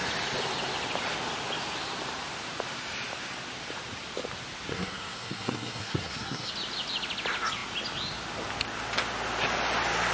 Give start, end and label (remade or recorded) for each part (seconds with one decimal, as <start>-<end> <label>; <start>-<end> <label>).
0.0-4.7 recorded; 4.7-6.5 remade; 6.5-10.1 recorded